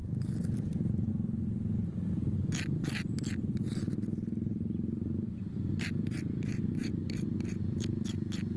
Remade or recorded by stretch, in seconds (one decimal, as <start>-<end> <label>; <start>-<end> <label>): 0.0-1.1 remade; 1.1-3.4 recorded; 3.4-8.6 remade